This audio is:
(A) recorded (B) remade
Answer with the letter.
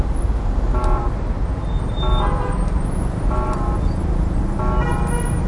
A